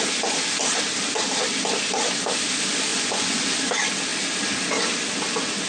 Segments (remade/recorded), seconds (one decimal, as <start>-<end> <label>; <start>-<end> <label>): 0.0-2.9 recorded; 2.9-3.4 remade; 3.4-5.7 recorded